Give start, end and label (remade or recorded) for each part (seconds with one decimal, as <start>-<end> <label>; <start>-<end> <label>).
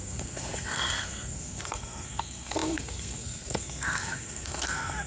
0.0-5.1 remade